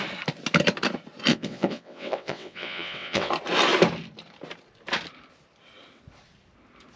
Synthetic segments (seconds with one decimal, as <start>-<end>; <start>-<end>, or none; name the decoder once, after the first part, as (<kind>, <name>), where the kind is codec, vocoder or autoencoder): 1.3-3.3 (vocoder, WaveNeXt)